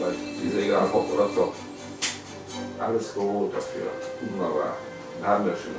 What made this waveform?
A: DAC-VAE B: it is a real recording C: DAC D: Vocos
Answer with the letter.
B